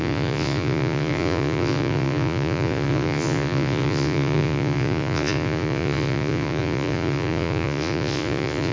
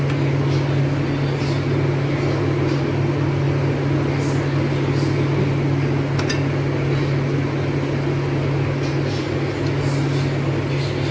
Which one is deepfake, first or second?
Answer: first